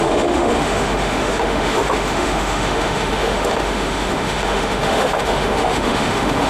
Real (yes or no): no